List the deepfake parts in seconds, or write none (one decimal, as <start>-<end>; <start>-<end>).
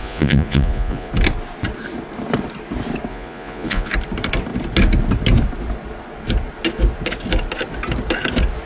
0.0-1.1; 3.1-3.9